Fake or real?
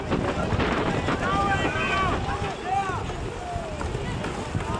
real